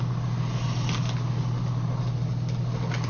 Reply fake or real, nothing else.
real